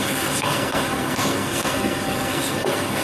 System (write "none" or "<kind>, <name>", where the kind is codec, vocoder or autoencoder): codec, SNAC